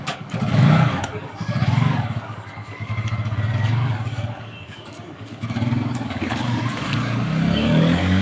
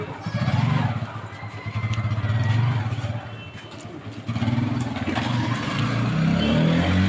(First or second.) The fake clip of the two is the first